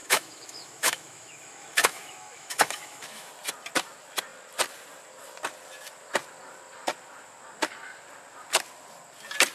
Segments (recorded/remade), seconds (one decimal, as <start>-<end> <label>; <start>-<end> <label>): 0.0-3.3 remade; 3.3-9.5 recorded